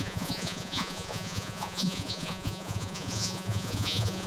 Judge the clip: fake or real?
fake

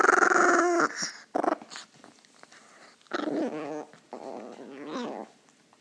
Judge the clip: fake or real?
real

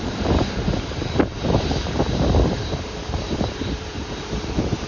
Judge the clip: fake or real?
fake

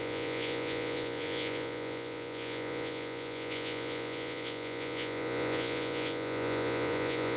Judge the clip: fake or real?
fake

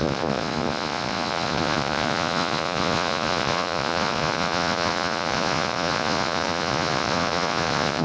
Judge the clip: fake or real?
fake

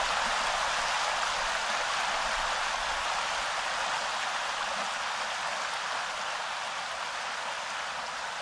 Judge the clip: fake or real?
real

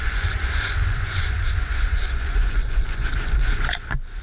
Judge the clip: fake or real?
fake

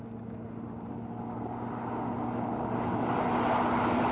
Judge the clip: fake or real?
real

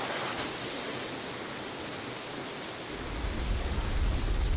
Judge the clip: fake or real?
real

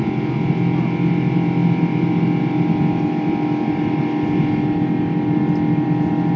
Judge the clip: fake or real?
real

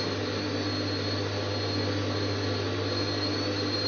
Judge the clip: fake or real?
real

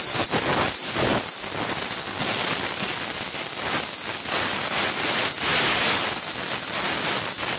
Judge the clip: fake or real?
real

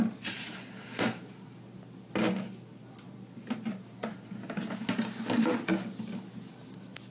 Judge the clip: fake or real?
real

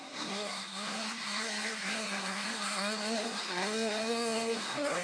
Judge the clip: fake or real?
fake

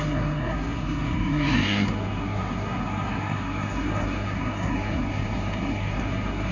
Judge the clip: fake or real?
fake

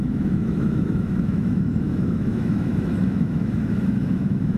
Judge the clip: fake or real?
fake